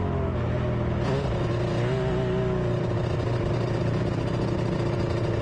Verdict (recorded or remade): recorded